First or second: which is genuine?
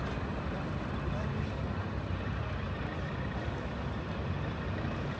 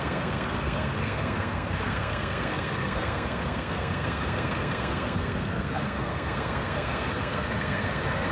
first